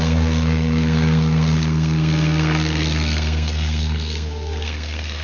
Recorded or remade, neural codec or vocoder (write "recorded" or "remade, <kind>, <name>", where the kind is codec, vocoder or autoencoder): remade, codec, SNAC